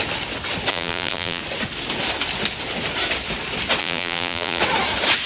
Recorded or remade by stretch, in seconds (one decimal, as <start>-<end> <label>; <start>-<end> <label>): 0.0-0.7 recorded; 0.7-1.4 remade; 1.4-3.8 recorded; 3.8-4.6 remade; 4.6-5.3 recorded